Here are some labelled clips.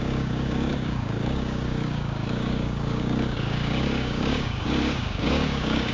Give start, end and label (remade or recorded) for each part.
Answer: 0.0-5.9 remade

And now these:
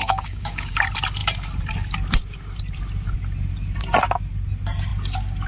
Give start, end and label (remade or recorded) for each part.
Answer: 0.0-0.7 remade; 0.7-5.5 recorded

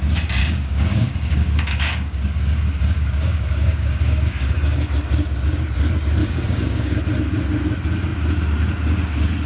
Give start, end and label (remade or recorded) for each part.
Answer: 0.0-0.4 recorded; 0.4-4.9 remade; 4.9-6.2 recorded; 6.2-7.0 remade; 7.0-9.5 recorded

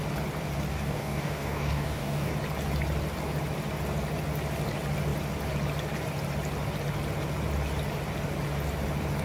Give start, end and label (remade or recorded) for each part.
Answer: 0.0-0.7 recorded; 0.7-2.3 remade; 2.3-9.2 recorded

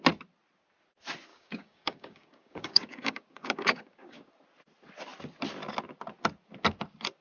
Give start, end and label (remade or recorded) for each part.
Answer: 0.0-1.3 recorded; 1.3-4.3 remade; 4.3-7.2 recorded

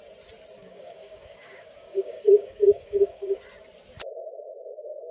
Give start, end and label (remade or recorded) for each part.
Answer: 0.0-0.6 recorded; 0.6-3.4 remade; 3.4-5.1 recorded